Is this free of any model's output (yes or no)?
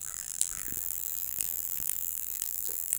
no